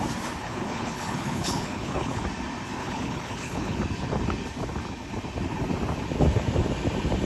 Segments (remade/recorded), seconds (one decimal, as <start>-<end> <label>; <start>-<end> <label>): 0.0-0.4 recorded; 0.4-2.2 remade; 2.2-2.8 recorded; 2.8-3.8 remade; 3.8-7.2 recorded

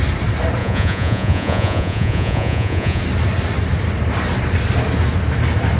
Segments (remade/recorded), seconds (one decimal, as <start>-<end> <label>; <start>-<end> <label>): 0.0-0.6 recorded; 0.6-3.0 remade; 3.0-5.8 recorded